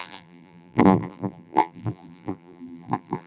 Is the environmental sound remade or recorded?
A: remade